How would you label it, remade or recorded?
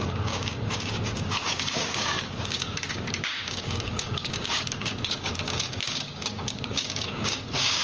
remade